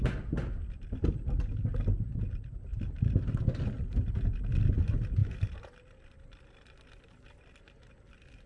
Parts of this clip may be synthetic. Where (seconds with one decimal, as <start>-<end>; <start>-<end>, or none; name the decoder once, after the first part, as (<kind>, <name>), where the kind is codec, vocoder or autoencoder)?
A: none